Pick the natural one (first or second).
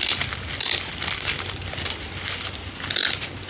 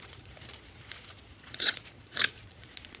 first